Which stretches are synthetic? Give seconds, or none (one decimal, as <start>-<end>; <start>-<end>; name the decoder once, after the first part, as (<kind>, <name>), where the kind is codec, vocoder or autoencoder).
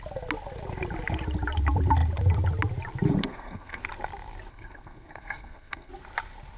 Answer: 3.2-3.8 (codec, SNAC); 4.5-5.9